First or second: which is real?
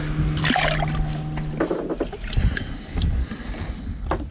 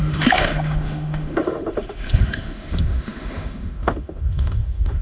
first